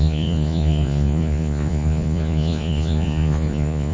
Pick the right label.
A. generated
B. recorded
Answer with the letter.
A